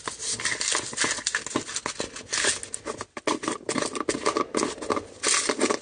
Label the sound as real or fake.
real